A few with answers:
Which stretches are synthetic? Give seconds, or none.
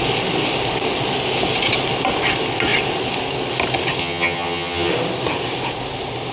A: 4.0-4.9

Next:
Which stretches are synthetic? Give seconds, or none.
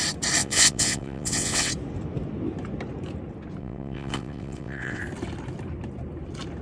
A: 0.4-1.7; 3.6-5.0